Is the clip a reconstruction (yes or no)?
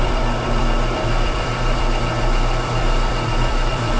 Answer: yes